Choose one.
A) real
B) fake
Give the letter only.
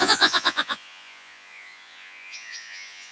B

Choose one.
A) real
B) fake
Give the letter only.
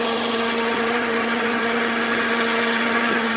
B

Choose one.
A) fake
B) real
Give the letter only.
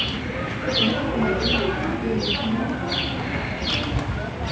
B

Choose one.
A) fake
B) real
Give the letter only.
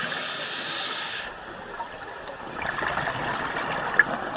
B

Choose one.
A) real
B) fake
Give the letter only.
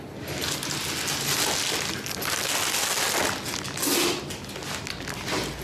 A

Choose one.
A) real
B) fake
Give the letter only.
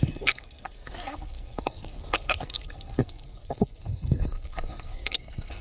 B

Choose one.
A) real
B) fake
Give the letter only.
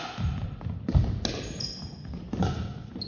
A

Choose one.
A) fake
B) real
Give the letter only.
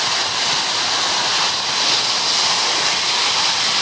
B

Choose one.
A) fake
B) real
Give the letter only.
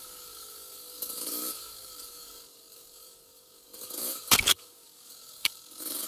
A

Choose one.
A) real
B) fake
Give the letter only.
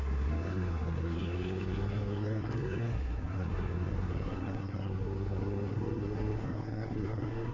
B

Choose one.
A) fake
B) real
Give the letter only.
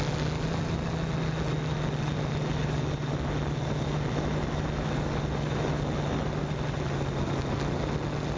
B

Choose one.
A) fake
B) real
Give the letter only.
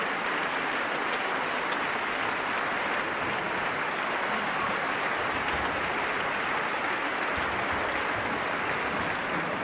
B